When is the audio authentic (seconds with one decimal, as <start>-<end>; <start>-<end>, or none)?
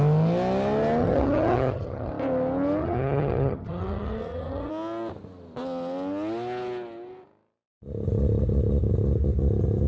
0.0-1.0; 2.1-2.8; 4.7-9.9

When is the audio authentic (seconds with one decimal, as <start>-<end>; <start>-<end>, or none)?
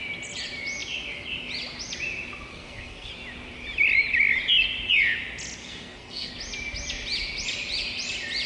0.0-2.5; 3.1-5.6; 6.3-8.5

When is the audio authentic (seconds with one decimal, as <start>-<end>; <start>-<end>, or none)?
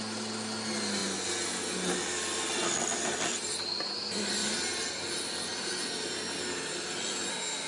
0.0-7.7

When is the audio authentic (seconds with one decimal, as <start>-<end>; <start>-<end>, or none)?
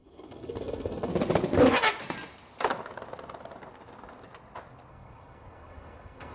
1.1-4.9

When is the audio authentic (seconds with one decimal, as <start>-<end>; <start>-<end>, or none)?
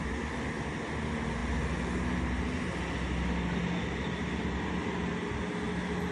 0.0-6.1